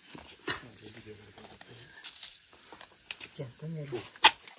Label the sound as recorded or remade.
recorded